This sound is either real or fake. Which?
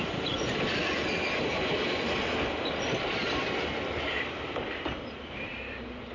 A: real